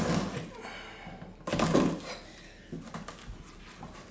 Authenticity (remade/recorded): recorded